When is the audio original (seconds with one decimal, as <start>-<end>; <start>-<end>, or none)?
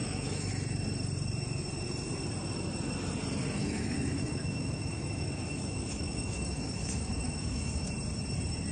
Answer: 0.5-3.6; 7.9-8.7